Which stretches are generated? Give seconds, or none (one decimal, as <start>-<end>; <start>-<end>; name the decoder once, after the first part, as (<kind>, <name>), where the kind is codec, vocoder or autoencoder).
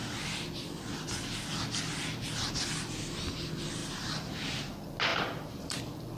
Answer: 5.1-5.8 (vocoder, BigVGAN v2)